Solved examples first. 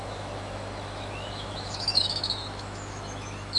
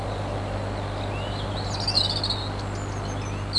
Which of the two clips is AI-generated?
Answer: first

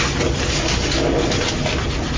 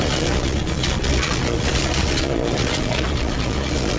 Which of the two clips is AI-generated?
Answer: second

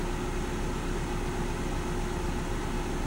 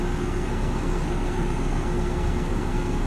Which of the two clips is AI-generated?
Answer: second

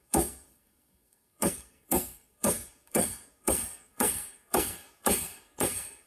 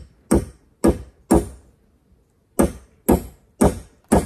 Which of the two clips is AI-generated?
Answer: first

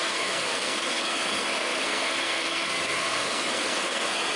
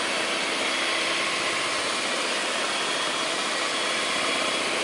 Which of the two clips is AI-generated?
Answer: first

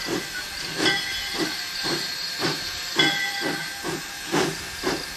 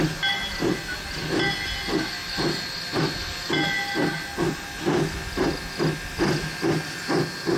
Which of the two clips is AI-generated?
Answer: first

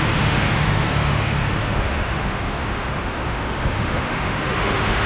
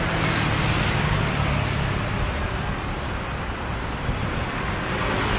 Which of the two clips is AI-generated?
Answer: first